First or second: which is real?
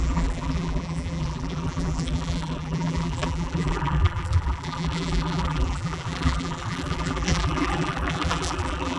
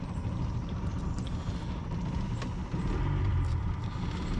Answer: second